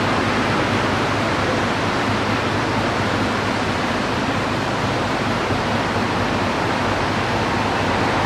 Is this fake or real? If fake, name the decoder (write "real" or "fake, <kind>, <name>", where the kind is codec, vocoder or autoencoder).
fake, vocoder, BigVGAN v2